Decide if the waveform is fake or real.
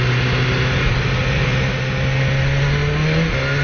real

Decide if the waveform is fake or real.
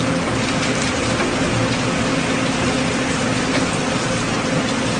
real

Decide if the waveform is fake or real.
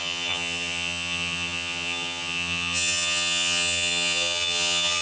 fake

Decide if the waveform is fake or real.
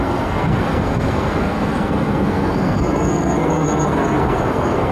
fake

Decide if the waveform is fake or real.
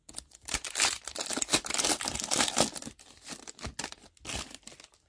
real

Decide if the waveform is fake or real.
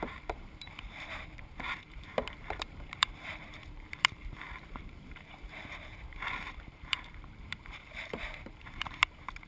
fake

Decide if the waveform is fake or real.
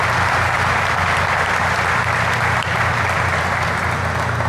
real